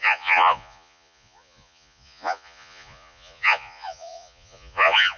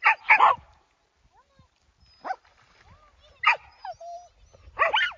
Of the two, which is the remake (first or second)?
first